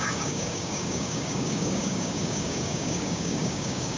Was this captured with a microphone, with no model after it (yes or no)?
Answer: no